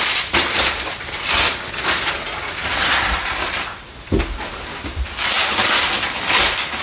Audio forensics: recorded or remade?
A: recorded